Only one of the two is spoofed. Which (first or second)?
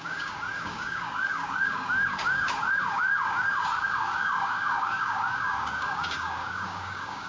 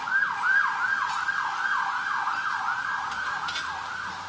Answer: first